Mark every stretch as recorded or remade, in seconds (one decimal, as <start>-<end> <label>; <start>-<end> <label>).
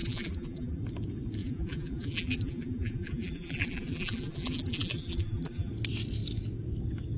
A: 0.0-0.8 remade; 0.8-1.4 recorded; 1.4-5.7 remade; 5.7-7.2 recorded